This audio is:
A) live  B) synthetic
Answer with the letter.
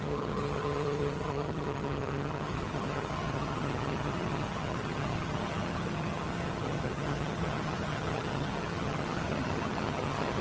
B